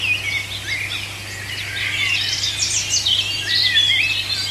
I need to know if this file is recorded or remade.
recorded